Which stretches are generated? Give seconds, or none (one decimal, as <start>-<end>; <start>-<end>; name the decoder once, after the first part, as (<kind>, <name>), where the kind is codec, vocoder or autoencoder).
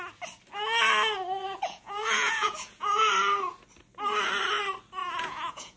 1.4-3.1 (vocoder, Vocos); 5.0-5.8